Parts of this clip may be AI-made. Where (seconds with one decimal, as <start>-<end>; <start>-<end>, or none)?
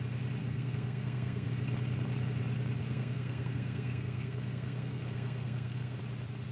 0.4-1.5; 2.8-6.0